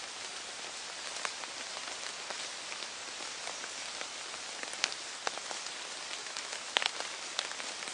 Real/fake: real